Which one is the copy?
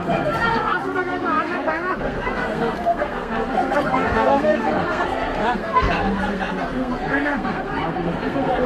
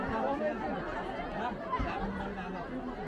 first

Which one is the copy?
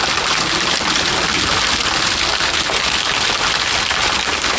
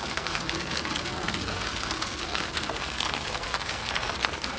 second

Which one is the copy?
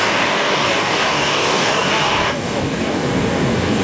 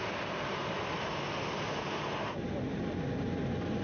first